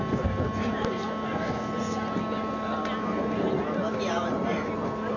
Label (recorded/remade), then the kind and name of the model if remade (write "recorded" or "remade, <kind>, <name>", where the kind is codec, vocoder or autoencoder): recorded